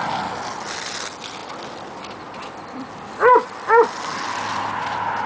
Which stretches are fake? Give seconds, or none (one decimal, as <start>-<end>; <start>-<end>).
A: none